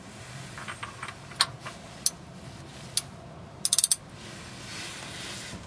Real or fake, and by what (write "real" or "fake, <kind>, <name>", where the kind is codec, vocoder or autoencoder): real